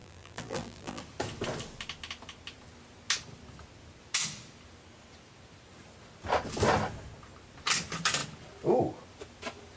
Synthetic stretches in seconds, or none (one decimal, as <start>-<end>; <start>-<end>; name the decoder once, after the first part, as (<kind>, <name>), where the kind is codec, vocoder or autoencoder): 0.0-1.0 (vocoder, BigVGAN v2)